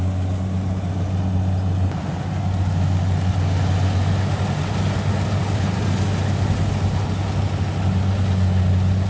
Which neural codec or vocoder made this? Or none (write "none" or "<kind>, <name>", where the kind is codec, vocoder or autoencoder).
none